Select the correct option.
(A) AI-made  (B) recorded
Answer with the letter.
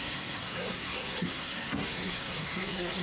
A